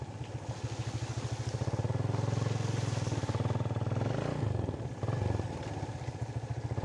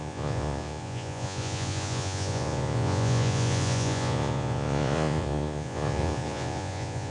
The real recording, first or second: first